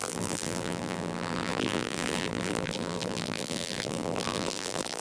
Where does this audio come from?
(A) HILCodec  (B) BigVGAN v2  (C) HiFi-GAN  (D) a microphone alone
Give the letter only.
B